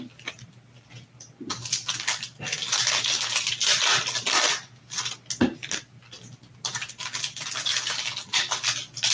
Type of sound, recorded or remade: recorded